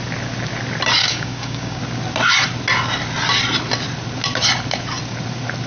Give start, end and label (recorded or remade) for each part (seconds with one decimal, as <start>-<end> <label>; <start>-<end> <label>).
0.0-1.0 recorded; 1.0-1.8 remade; 1.8-5.7 recorded